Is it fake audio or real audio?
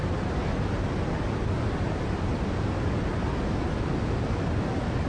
real